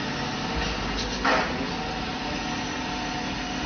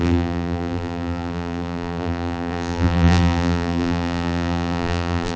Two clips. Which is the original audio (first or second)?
first